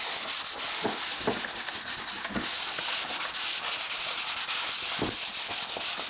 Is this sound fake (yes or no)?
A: no